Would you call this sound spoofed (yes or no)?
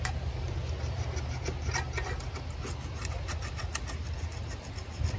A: no